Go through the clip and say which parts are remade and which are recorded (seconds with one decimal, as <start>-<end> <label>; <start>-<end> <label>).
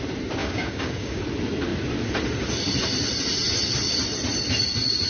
0.0-0.4 recorded; 0.4-1.2 remade; 1.2-5.1 recorded